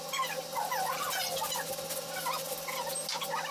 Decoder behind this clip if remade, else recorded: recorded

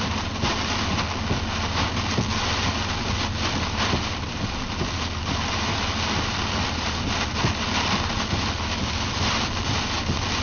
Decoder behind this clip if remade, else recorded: recorded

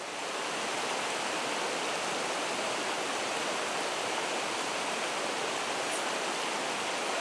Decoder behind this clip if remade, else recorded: recorded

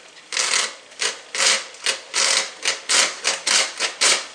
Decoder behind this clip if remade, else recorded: recorded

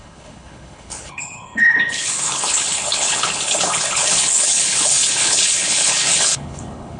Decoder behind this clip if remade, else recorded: remade, codec, HILCodec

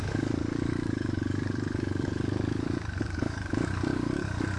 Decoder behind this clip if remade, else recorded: remade, codec, DAC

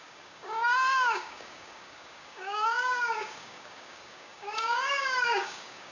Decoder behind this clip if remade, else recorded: remade, codec, DAC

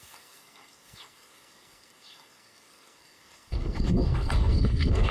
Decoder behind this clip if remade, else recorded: remade, codec, SNAC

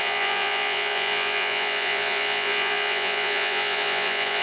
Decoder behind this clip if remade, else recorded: remade, vocoder, Vocos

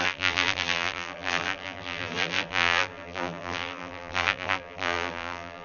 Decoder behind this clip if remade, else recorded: remade, vocoder, BigVGAN v2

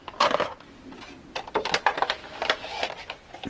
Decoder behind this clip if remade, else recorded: recorded